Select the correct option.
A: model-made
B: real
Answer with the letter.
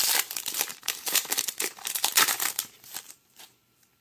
A